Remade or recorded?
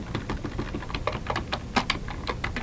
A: recorded